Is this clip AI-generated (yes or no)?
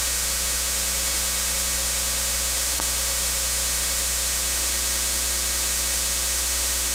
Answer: yes